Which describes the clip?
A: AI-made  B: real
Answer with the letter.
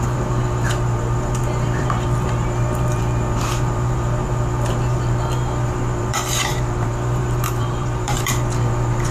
A